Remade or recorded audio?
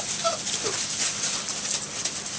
recorded